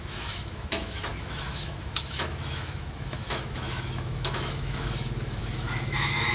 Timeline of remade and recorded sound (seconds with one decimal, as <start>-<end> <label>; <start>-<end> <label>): 0.0-6.3 remade